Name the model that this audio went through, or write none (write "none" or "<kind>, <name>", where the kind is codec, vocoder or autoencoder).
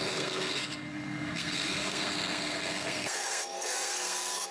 codec, SNAC